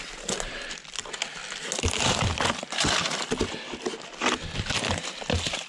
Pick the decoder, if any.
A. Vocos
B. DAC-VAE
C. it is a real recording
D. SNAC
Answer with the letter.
C